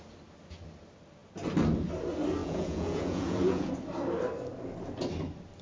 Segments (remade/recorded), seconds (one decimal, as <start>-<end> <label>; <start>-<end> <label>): 0.0-2.4 recorded; 2.4-3.7 remade; 3.7-5.6 recorded